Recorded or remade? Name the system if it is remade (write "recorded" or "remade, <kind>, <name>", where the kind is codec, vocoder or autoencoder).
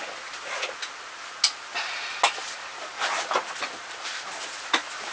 recorded